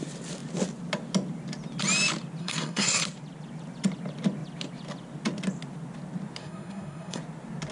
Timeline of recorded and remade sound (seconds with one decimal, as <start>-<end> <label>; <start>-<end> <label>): 0.0-2.4 recorded; 2.4-3.0 remade; 3.0-6.4 recorded; 6.4-7.2 remade; 7.2-7.7 recorded